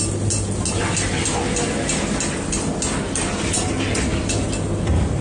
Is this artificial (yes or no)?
no